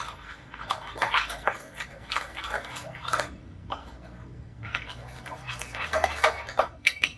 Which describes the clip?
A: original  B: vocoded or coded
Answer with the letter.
B